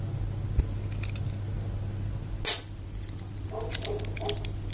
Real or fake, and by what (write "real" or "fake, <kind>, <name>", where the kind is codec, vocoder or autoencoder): real